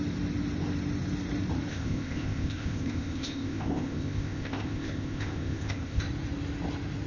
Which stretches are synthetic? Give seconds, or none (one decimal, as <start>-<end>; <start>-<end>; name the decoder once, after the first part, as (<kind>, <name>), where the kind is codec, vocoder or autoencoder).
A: 1.7-6.0 (codec, ZipCodec)